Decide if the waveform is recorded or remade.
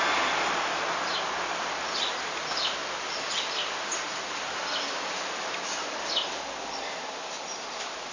recorded